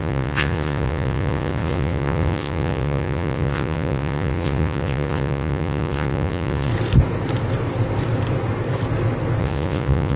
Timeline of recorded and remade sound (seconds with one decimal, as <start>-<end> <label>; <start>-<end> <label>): 0.0-6.7 remade; 6.7-9.4 recorded; 9.4-10.2 remade